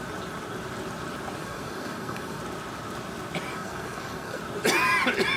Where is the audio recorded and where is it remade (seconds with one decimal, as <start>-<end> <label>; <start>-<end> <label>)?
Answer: 0.0-1.4 recorded; 1.4-2.4 remade; 2.4-3.5 recorded; 3.5-4.4 remade; 4.4-5.4 recorded

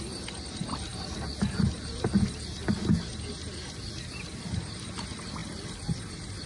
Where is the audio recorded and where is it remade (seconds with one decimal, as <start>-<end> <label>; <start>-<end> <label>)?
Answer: 0.0-6.5 recorded

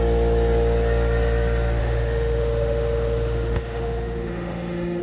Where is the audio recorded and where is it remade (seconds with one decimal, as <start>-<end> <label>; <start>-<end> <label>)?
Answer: 0.0-1.8 recorded; 1.8-5.0 remade

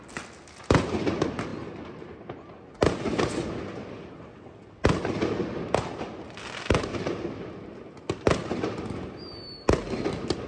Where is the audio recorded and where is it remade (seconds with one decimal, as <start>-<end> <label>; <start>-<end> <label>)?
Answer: 0.0-10.5 recorded

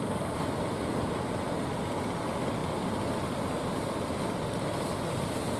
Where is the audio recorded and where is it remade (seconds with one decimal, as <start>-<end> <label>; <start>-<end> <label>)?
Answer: 0.0-5.6 recorded

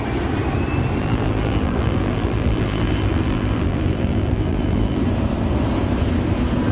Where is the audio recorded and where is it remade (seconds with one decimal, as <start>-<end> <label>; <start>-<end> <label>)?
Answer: 0.0-1.0 recorded; 1.0-5.0 remade; 5.0-6.7 recorded